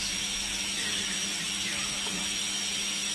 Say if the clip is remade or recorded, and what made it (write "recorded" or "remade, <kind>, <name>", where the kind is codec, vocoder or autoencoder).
remade, autoencoder, DAC-VAE